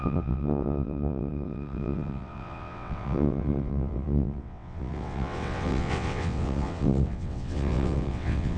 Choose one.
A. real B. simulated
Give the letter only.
B